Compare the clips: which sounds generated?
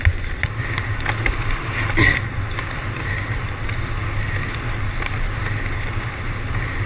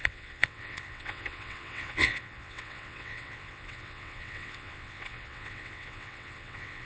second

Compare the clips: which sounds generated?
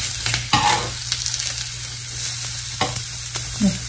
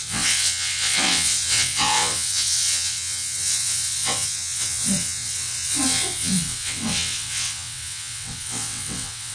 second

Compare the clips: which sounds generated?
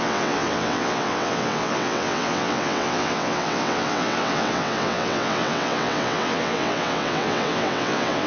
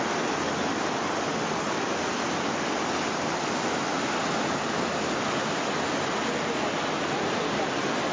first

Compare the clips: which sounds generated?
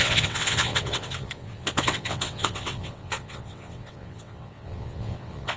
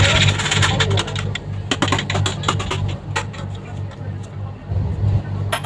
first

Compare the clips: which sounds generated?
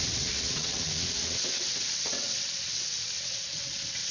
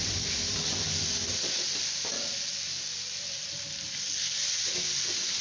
first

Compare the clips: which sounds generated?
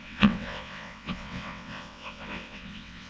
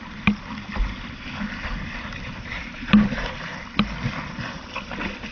first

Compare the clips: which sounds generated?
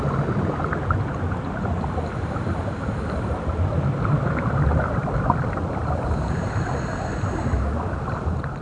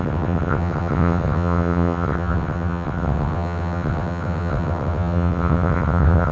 second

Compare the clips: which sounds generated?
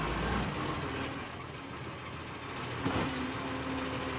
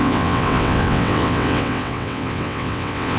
second